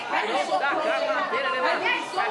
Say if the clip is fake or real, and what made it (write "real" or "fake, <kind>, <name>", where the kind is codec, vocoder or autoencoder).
real